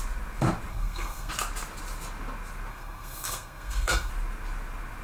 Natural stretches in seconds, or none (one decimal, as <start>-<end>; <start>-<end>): 0.0-0.7; 1.3-2.7; 4.1-5.0